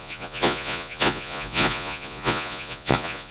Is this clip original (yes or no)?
no